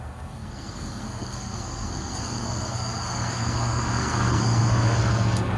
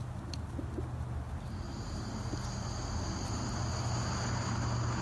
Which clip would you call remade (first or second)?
first